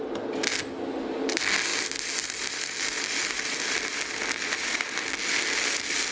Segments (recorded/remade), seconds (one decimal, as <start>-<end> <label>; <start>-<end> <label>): 0.0-6.1 recorded